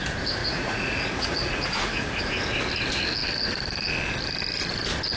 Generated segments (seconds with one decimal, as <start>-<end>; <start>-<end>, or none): 0.4-2.2